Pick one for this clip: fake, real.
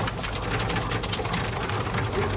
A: real